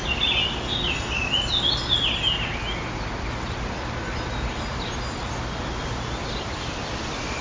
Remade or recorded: recorded